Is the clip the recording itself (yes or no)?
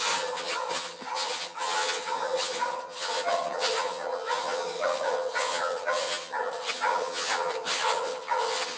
no